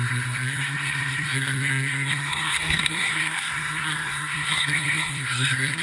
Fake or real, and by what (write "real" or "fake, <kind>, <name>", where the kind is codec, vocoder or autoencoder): fake, codec, SNAC